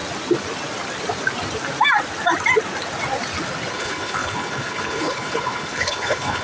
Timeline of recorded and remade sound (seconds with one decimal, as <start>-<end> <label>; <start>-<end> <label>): 0.0-3.7 recorded; 3.7-6.4 remade